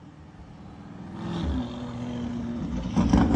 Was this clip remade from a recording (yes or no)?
no